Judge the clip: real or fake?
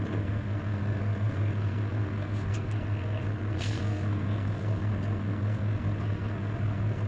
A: fake